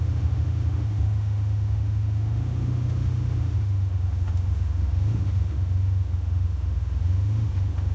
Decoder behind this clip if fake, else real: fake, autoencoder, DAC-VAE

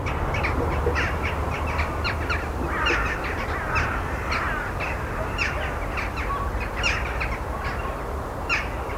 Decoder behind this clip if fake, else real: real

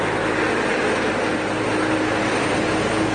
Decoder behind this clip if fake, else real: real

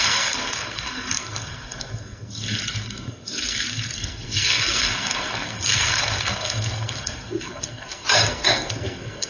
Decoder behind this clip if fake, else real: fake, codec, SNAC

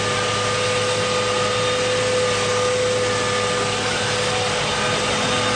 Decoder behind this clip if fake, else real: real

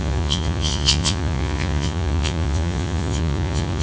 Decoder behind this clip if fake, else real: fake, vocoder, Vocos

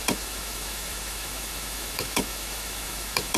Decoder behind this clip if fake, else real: fake, autoencoder, DAC-VAE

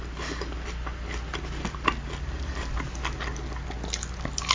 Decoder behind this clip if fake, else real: real